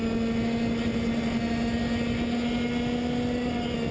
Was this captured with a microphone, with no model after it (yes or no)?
yes